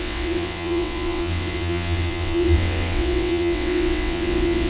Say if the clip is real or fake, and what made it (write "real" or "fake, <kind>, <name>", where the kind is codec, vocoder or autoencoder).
fake, vocoder, WaveNeXt